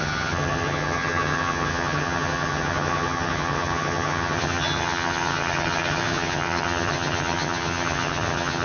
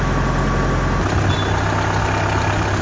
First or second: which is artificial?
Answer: first